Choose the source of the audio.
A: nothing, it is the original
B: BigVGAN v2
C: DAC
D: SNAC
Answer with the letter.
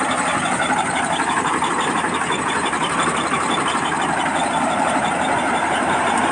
B